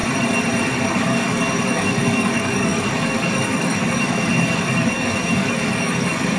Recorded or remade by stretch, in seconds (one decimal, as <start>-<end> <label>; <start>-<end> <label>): 0.0-0.8 recorded; 0.8-6.4 remade